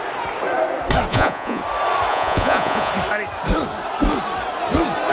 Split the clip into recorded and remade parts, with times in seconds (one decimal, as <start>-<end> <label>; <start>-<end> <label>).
0.0-1.1 recorded; 1.1-1.6 remade; 1.6-2.1 recorded; 2.1-2.9 remade; 2.9-5.1 recorded